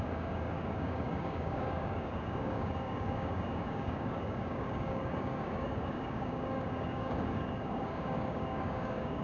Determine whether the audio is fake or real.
fake